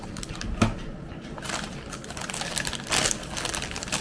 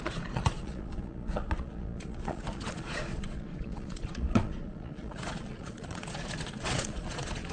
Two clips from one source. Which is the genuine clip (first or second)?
first